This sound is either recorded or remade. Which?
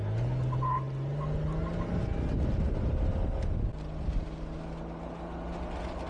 recorded